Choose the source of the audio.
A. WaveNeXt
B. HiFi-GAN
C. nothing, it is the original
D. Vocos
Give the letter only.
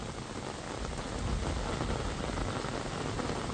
C